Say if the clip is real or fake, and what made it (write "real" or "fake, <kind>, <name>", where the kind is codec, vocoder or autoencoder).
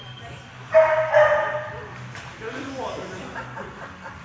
real